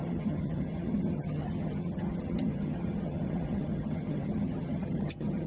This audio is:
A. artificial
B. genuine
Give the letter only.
A